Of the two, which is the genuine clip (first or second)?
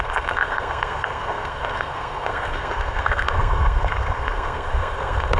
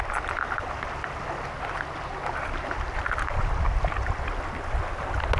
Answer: second